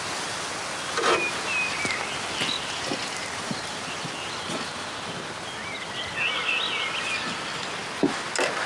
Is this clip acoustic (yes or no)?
yes